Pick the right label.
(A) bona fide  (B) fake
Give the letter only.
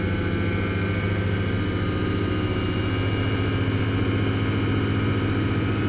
A